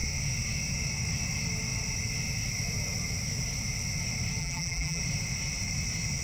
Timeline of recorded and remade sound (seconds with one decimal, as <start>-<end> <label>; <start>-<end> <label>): 0.0-4.4 recorded; 4.4-5.0 remade; 5.0-6.2 recorded